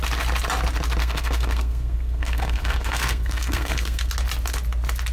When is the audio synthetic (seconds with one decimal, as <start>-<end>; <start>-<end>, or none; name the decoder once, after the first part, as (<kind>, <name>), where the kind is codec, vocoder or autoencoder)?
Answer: 1.0-4.1 (codec, SNAC)